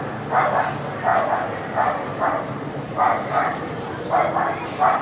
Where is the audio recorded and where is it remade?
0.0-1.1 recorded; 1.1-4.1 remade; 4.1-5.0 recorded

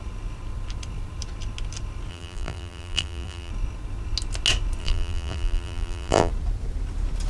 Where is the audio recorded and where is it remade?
0.0-2.1 recorded; 2.1-3.5 remade; 3.5-4.8 recorded; 4.8-6.3 remade; 6.3-7.3 recorded

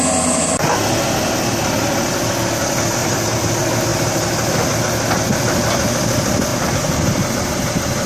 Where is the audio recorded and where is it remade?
0.0-3.0 recorded; 3.0-3.5 remade; 3.5-3.9 recorded; 3.9-4.8 remade; 4.8-6.5 recorded; 6.5-8.1 remade

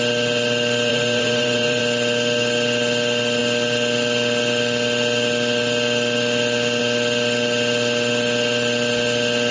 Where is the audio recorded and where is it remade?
0.0-0.9 recorded; 0.9-1.8 remade; 1.8-9.5 recorded

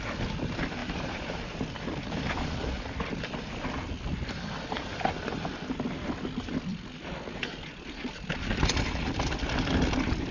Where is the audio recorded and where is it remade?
0.0-0.8 recorded; 0.8-4.7 remade; 4.7-10.3 recorded

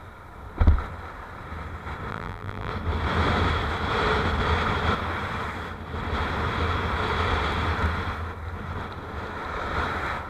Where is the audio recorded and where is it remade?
0.0-2.1 recorded; 2.1-2.7 remade; 2.7-10.3 recorded

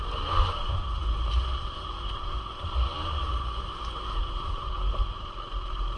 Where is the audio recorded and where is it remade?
0.0-6.0 remade

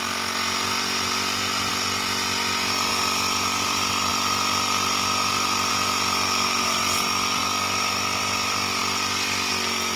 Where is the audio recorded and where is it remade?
0.0-1.7 remade; 1.7-2.9 recorded; 2.9-7.4 remade; 7.4-8.2 recorded; 8.2-10.0 remade